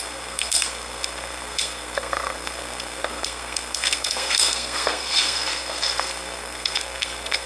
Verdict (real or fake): fake